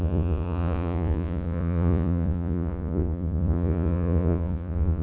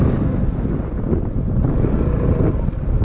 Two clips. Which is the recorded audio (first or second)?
second